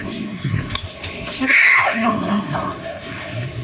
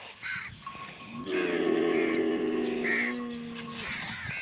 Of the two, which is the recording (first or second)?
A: second